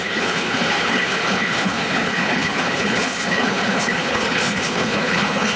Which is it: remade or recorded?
remade